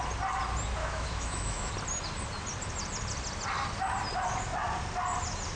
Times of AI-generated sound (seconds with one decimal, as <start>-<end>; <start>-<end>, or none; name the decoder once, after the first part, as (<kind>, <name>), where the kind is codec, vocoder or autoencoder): 0.8-1.7 (autoencoder, DAC-VAE)